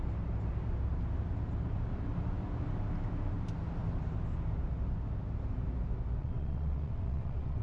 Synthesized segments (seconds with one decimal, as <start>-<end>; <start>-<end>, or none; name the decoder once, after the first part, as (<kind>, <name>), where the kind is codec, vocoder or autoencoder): 6.2-7.6 (vocoder, WaveNeXt)